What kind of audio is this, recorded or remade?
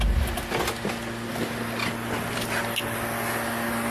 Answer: recorded